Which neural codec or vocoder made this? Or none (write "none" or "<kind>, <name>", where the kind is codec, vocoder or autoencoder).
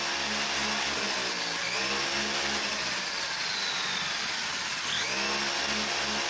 none